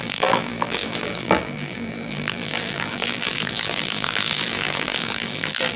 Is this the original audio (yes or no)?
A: no